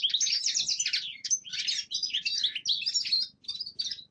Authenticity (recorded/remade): recorded